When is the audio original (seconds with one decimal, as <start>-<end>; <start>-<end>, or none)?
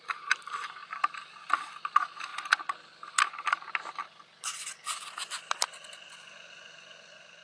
0.0-7.4